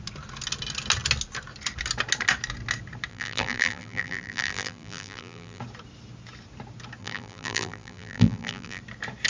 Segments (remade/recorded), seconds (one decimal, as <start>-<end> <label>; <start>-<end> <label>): 0.0-3.1 recorded; 3.1-5.6 remade; 5.6-7.0 recorded; 7.0-8.8 remade; 8.8-9.3 recorded